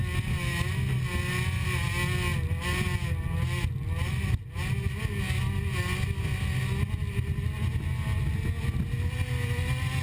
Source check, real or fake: real